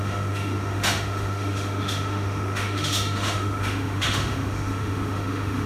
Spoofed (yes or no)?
yes